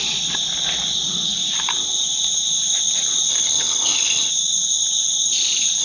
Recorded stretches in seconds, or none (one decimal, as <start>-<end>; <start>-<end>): 0.0-3.3; 4.3-5.8